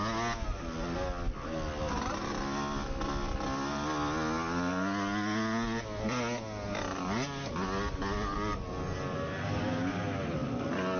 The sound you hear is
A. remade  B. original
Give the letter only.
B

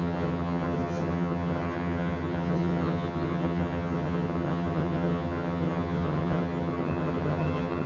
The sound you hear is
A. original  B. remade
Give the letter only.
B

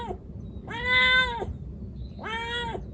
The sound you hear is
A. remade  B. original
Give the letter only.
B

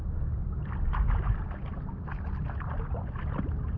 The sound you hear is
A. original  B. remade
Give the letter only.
A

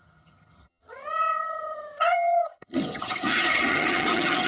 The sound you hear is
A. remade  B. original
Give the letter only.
A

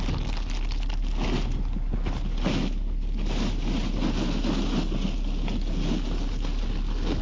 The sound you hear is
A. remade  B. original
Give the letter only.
B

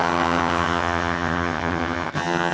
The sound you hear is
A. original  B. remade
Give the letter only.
B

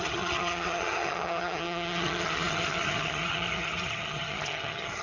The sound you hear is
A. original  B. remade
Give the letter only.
B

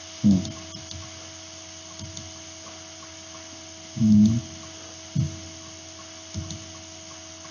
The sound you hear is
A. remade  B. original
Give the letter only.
B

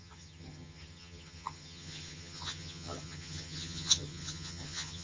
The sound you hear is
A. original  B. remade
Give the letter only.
B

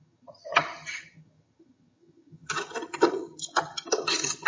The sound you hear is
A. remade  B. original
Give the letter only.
A